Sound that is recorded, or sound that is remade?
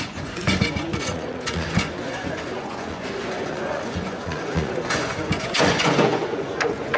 remade